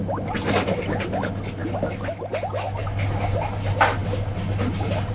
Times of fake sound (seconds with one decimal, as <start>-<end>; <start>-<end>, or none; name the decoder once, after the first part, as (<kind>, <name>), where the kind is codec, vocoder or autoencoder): none